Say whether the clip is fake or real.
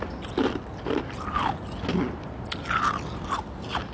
real